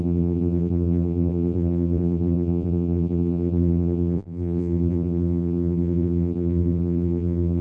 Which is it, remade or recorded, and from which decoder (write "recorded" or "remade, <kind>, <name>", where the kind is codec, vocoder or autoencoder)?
remade, vocoder, BigVGAN v2